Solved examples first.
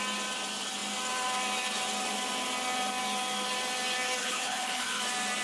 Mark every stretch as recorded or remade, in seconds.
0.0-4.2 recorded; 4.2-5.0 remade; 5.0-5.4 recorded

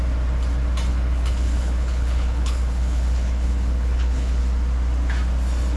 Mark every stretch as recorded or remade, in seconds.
0.0-0.9 recorded; 0.9-4.4 remade; 4.4-5.8 recorded